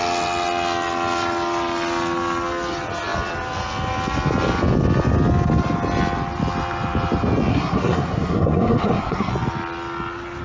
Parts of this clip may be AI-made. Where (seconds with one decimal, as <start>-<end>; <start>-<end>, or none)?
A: 7.5-9.3